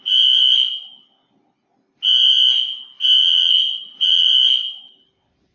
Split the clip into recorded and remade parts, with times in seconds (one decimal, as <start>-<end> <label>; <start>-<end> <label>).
0.0-3.2 recorded; 3.2-4.3 remade; 4.3-5.5 recorded